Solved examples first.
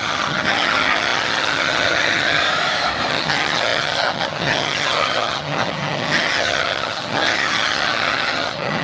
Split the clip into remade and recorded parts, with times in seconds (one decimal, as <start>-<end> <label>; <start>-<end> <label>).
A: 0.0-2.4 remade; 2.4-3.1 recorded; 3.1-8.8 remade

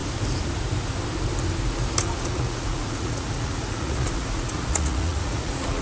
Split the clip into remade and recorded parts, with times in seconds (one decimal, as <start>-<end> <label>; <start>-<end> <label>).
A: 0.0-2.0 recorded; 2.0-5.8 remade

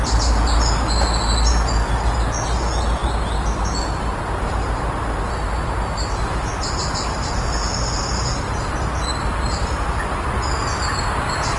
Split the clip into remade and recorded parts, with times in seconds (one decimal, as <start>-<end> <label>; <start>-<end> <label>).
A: 0.0-11.6 recorded

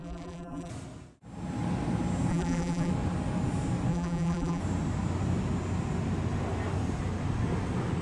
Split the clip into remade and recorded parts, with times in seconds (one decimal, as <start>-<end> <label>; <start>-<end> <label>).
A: 0.0-0.7 remade; 0.7-2.3 recorded; 2.3-2.9 remade; 2.9-3.9 recorded; 3.9-4.6 remade; 4.6-8.0 recorded